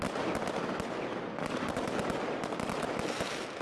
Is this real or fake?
real